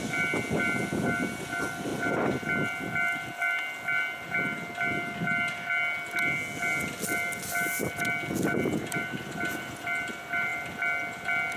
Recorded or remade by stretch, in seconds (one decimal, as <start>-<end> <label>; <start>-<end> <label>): 0.0-11.6 recorded